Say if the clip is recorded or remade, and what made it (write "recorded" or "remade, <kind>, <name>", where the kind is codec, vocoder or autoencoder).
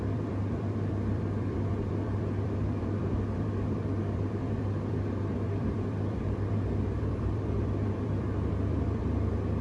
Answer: remade, vocoder, BigVGAN v2